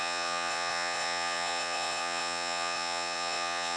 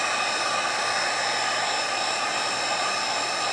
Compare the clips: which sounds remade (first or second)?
first